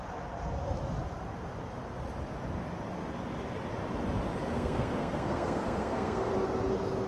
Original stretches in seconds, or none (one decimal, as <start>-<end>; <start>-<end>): 0.0-4.5; 6.3-7.1